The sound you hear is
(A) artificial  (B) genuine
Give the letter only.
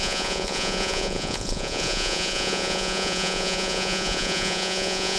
A